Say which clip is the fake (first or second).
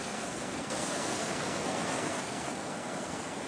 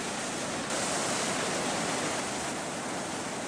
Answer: first